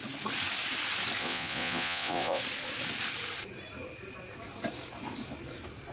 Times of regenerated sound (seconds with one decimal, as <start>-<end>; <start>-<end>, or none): 1.2-2.4